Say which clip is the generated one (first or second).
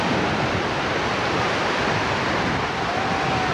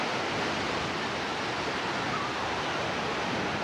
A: first